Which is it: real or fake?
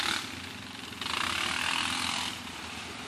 real